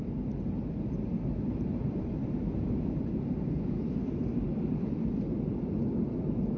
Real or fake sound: fake